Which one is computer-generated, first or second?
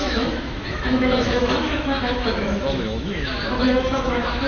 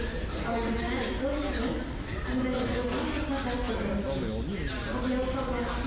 first